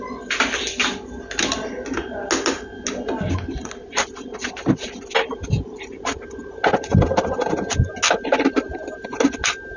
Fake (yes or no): no